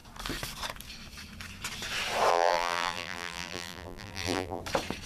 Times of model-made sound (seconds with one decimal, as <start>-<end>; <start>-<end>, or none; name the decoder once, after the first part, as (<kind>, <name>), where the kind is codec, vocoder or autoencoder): 2.3-4.6 (vocoder, BigVGAN v2)